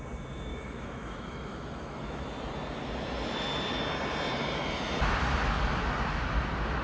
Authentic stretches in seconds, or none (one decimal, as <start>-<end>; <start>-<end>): 0.0-0.5; 2.2-6.8